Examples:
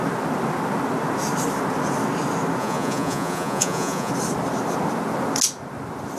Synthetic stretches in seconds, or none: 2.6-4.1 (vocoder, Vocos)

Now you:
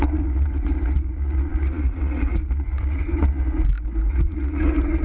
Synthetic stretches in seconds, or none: 0.0-3.6 (vocoder, Vocos); 4.1-5.0

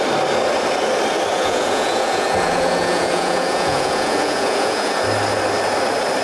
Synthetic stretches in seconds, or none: 1.3-5.0 (vocoder, Vocos)

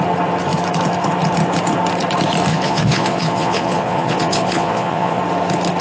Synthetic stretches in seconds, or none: 2.5-5.2 (vocoder, Vocos)

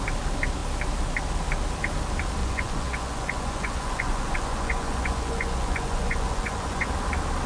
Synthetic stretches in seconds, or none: 2.4-6.9 (vocoder, Vocos)

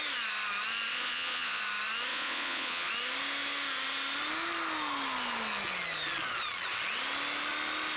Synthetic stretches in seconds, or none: 0.9-1.6 (vocoder, Vocos); 2.1-2.9

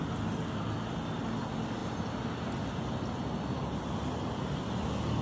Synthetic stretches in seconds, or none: none